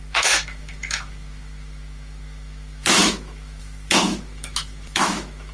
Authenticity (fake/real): fake